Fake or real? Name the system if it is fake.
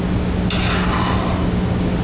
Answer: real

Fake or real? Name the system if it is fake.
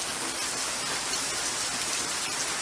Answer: real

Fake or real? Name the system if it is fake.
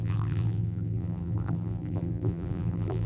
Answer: fake, vocoder, BigVGAN v2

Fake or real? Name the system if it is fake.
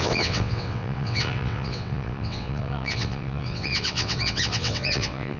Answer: fake, vocoder, WaveNeXt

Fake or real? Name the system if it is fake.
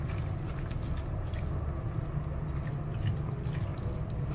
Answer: real